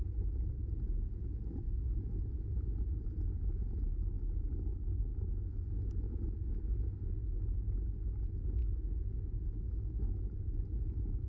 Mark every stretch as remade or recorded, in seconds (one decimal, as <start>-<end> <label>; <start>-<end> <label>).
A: 0.0-8.6 recorded; 8.6-9.9 remade; 9.9-11.3 recorded